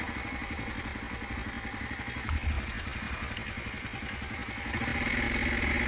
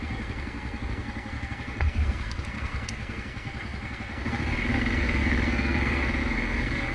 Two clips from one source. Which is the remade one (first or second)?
second